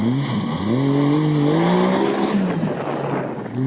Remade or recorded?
recorded